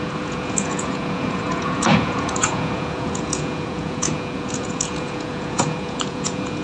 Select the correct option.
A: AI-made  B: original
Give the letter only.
A